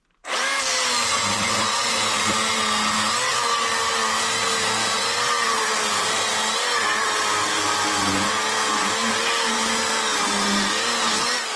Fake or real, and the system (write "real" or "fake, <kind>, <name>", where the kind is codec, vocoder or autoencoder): real